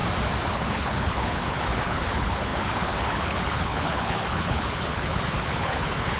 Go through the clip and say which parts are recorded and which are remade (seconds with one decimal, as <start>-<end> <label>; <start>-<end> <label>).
0.0-0.5 recorded; 0.5-6.2 remade